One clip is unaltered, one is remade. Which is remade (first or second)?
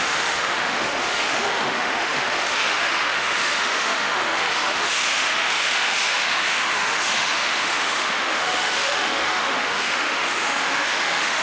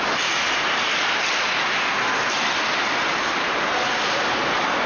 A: first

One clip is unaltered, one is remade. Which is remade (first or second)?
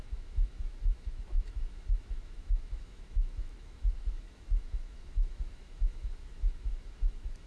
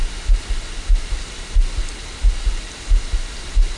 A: first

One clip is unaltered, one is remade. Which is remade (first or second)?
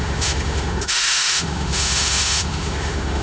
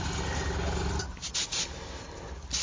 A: first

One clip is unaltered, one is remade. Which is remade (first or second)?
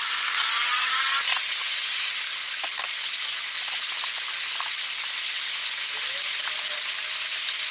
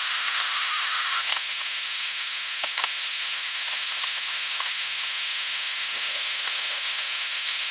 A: second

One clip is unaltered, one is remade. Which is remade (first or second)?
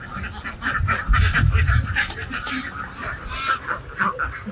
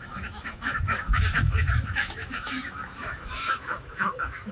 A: second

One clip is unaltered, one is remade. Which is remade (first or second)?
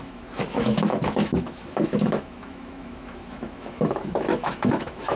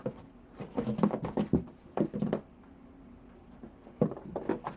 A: first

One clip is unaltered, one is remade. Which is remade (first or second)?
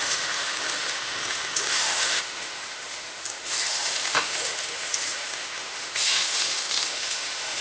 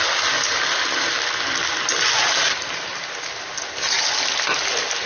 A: first